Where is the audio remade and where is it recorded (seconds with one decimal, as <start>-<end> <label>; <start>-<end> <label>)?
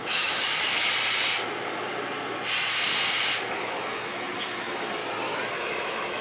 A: 0.0-0.9 remade; 0.9-3.5 recorded; 3.5-5.0 remade; 5.0-5.5 recorded; 5.5-6.2 remade